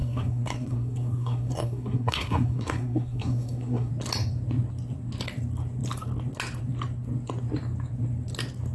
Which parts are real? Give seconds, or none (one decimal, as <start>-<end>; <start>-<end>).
3.9-8.7